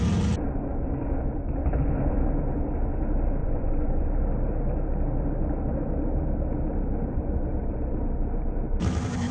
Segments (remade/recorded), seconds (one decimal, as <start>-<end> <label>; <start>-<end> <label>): 0.0-3.4 recorded; 3.4-4.1 remade; 4.1-9.3 recorded